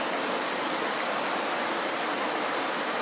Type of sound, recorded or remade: recorded